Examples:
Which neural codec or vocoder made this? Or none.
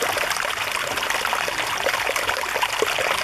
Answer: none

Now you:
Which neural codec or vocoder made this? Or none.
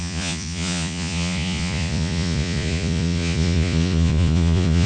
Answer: vocoder, Vocos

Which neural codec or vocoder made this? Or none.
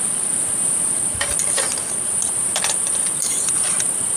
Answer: vocoder, BigVGAN v2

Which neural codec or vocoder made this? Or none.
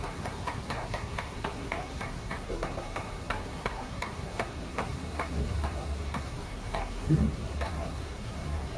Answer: codec, SNAC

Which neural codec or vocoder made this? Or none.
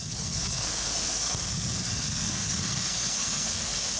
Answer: codec, SNAC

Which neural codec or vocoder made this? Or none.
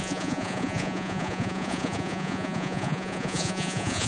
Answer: vocoder, Vocos